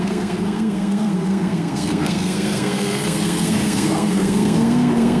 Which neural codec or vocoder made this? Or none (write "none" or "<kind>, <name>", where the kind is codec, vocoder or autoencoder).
codec, SNAC